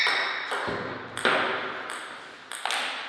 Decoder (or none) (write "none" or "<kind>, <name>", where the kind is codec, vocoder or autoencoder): none